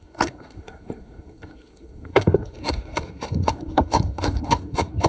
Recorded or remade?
remade